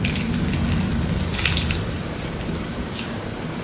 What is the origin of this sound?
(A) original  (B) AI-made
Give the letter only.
A